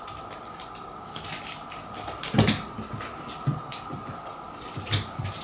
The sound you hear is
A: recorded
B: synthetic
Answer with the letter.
A